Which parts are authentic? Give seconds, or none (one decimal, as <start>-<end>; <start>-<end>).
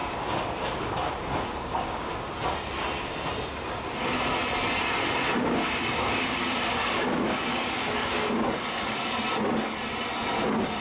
2.1-5.4; 7.1-7.5; 9.0-10.8